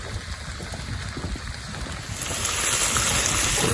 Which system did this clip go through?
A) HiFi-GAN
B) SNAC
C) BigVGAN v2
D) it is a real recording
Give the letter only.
D